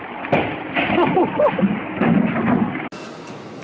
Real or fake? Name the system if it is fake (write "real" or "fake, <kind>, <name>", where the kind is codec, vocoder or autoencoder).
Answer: real